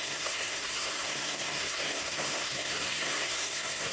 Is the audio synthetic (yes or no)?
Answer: yes